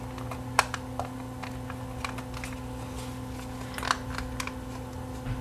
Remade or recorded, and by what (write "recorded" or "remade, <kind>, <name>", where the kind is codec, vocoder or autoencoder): recorded